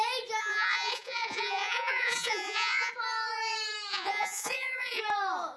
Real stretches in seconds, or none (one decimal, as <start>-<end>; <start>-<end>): 0.0-0.4; 2.9-3.9; 5.0-5.6